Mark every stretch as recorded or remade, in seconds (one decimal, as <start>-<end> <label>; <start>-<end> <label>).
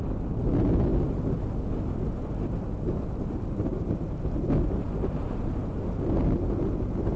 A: 0.0-7.2 recorded